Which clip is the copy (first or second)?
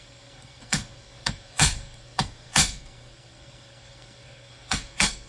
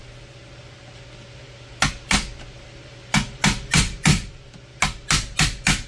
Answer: first